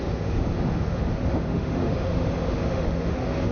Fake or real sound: fake